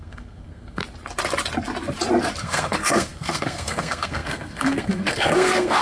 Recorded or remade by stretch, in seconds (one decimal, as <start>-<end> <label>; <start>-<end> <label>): 0.0-0.8 remade; 0.8-2.4 recorded; 2.4-5.8 remade